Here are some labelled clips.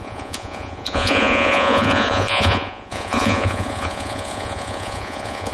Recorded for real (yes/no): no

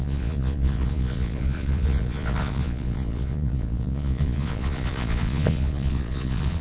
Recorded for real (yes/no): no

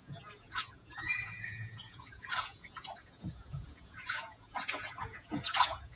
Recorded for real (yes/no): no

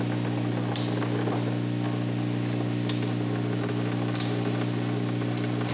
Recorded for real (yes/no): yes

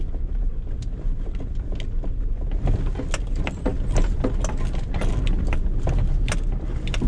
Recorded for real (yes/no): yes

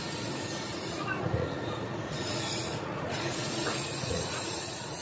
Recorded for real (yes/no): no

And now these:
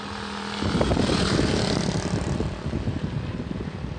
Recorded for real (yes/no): yes